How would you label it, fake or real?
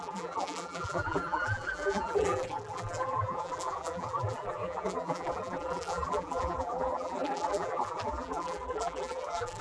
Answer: fake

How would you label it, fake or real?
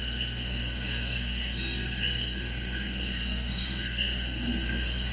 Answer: fake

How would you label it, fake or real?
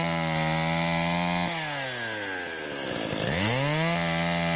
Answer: real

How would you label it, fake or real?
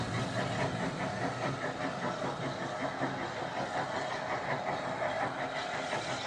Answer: real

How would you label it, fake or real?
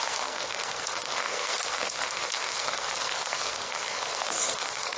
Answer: fake